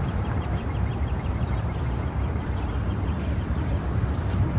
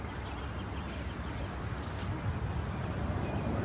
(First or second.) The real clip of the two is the second